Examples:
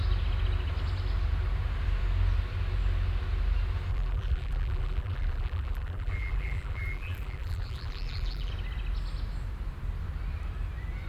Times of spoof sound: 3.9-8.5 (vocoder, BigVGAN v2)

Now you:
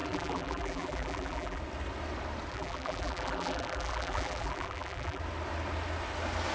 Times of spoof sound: 0.0-1.6 (vocoder, BigVGAN v2); 2.5-5.2

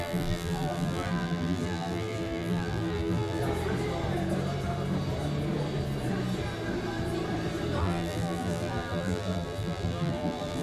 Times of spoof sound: 0.0-3.4 (vocoder, BigVGAN v2); 7.8-10.6

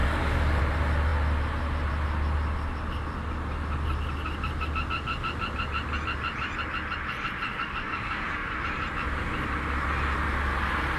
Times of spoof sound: 0.0-0.6 (codec, DAC); 7.5-8.6

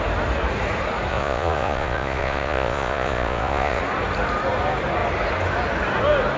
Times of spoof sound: 1.1-3.8 (vocoder, Vocos)

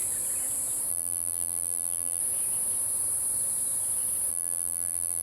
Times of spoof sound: 0.9-2.2 (vocoder, BigVGAN v2); 4.3-5.2

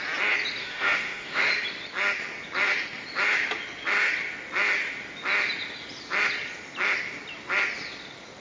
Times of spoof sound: 0.6-1.5 (autoencoder, DAC-VAE)

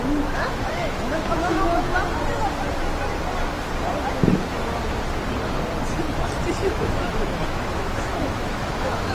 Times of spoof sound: 0.0-1.9 (autoencoder, DAC-VAE); 6.7-9.1